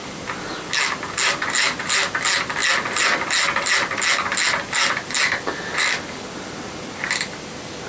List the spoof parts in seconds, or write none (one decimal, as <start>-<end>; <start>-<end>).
none